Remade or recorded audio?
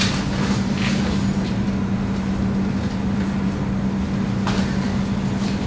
recorded